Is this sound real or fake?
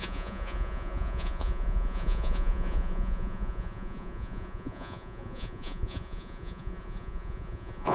fake